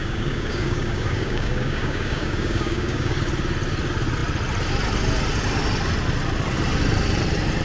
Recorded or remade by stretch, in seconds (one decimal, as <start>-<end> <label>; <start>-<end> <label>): 0.0-3.2 remade; 3.2-7.6 recorded